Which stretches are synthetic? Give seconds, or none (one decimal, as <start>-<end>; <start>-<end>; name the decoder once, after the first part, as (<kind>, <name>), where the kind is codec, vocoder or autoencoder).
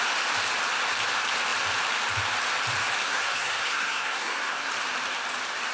3.0-4.7 (codec, SNAC)